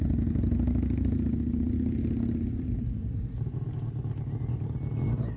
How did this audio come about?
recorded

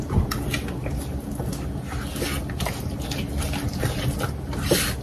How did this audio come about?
recorded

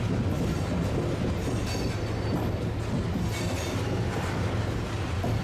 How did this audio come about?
recorded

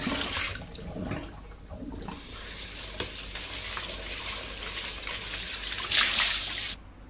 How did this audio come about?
recorded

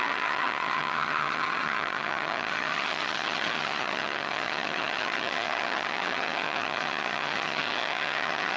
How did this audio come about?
remade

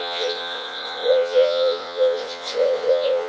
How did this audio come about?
remade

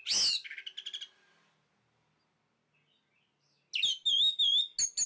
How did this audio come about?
recorded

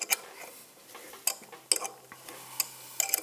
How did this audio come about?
recorded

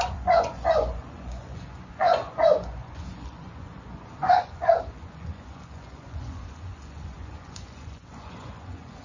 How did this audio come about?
remade